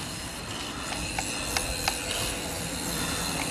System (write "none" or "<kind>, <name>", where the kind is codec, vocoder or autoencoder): none